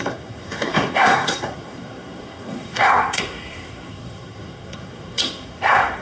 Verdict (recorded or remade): remade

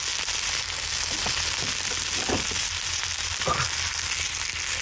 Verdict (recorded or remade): recorded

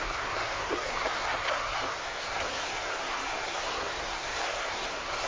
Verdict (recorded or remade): remade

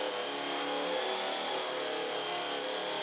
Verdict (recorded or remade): recorded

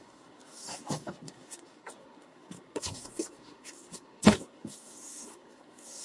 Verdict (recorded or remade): remade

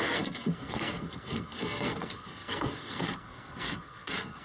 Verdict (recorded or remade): remade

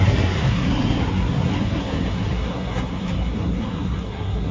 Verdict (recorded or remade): remade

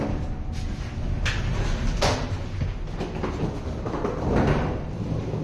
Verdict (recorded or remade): recorded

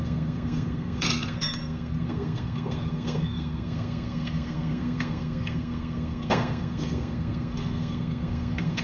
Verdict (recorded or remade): remade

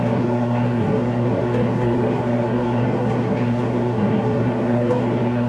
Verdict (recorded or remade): remade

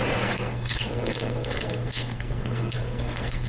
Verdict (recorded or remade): remade